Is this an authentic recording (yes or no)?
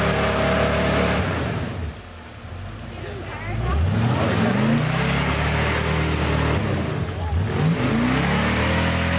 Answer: yes